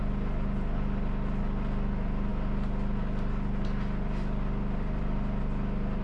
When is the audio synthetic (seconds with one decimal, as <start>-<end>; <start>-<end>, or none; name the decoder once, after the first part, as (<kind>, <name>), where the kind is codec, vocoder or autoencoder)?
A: none